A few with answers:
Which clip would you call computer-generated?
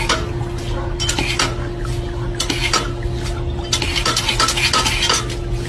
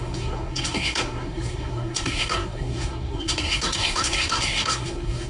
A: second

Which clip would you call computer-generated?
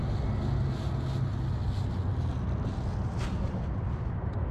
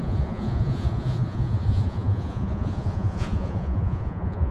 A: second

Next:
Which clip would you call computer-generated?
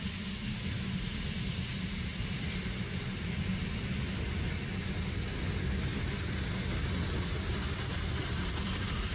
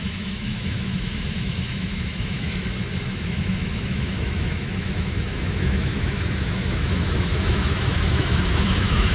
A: second